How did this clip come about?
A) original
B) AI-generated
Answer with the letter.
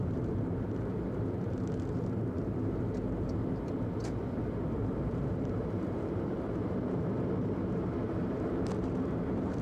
B